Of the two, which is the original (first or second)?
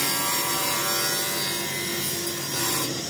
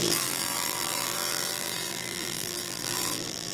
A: first